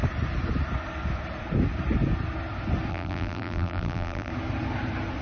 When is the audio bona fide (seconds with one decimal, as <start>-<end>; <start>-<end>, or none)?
0.0-2.9; 4.3-5.2